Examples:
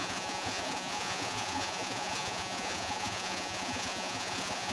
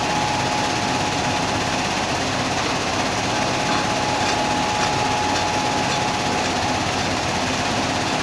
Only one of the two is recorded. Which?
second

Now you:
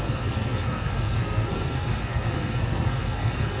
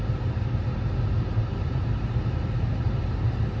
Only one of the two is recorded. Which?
second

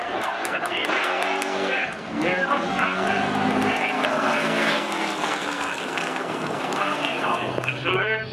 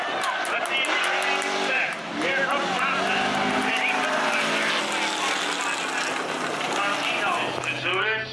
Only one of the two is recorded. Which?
second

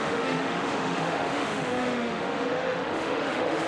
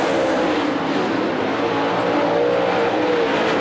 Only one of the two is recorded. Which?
second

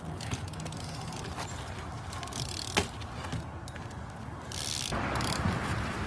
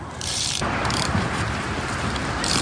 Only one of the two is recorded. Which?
first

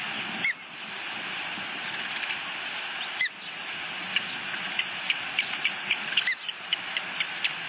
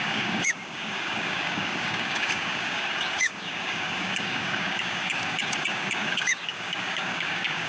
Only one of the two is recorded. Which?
first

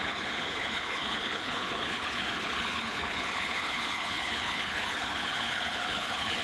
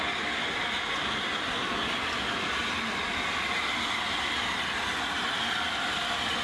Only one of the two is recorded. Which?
second